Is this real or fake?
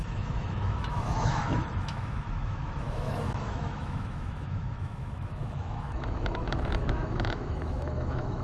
fake